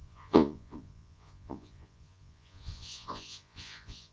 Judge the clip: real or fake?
fake